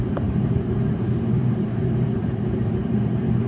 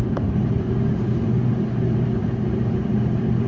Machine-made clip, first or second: first